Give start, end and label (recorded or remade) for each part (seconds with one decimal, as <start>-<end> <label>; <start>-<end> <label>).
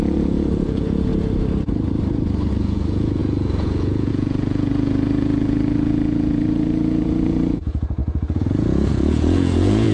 0.0-1.1 remade; 1.1-2.5 recorded; 2.5-9.9 remade